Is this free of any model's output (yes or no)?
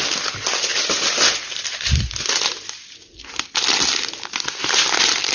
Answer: yes